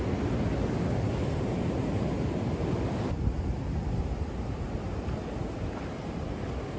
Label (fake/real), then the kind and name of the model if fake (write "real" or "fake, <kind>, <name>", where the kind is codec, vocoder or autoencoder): real